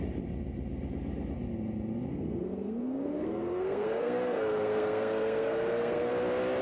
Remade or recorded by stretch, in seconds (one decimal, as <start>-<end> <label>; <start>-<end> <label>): 0.0-2.1 recorded; 2.1-6.1 remade; 6.1-6.6 recorded